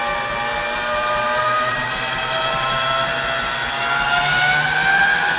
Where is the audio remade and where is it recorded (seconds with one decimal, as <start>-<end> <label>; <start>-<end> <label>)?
0.0-0.5 recorded; 0.5-2.9 remade; 2.9-5.4 recorded